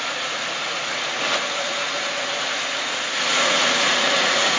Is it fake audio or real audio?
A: fake